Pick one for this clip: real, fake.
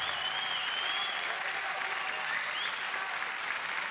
real